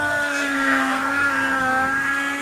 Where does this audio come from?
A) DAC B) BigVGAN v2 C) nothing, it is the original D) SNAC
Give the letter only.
D